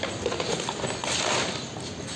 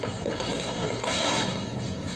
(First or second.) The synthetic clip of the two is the second